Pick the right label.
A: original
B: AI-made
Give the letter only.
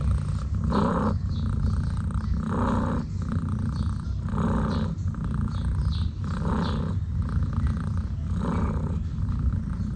A